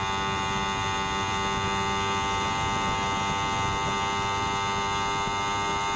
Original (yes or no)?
yes